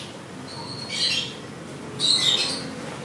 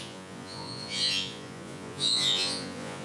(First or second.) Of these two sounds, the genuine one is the first